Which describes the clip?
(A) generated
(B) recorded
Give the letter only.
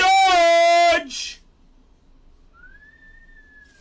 B